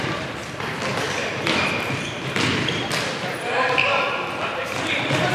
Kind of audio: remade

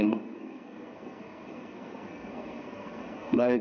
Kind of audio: remade